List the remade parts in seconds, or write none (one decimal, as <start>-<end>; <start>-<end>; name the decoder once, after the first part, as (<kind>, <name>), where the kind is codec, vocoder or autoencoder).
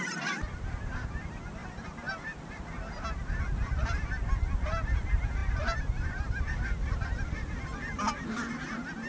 none